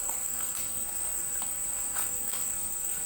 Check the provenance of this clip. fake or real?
fake